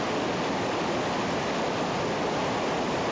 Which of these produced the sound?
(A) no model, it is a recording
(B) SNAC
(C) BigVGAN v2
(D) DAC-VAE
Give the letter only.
A